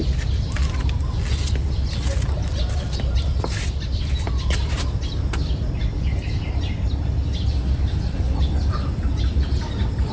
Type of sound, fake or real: real